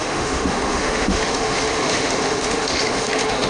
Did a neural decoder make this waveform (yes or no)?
yes